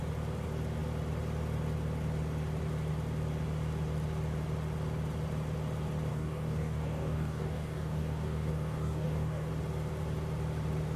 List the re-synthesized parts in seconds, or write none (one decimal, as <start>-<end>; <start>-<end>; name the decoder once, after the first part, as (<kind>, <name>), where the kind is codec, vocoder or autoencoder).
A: 6.1-9.5 (codec, DAC)